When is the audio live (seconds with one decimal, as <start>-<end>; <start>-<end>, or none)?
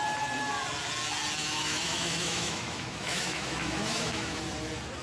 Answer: 0.0-1.4; 4.4-5.0